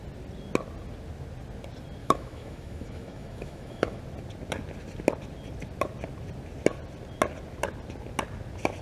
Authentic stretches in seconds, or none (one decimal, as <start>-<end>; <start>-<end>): 0.0-2.0; 4.0-8.8